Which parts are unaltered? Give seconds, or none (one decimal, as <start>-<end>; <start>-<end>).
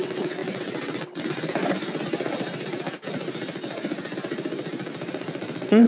1.6-5.1